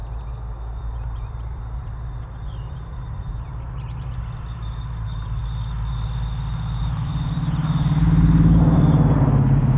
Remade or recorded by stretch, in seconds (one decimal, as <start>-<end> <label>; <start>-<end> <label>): 0.0-0.8 recorded; 0.8-5.4 remade; 5.4-6.5 recorded; 6.5-9.8 remade